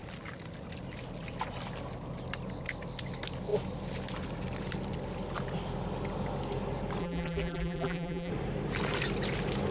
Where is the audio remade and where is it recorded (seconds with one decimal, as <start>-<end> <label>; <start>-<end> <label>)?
0.0-7.0 recorded; 7.0-8.3 remade; 8.3-9.7 recorded